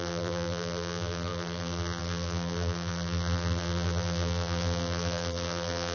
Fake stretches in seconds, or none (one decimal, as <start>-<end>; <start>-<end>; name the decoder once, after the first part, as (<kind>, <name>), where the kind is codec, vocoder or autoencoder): 0.0-5.9 (vocoder, BigVGAN v2)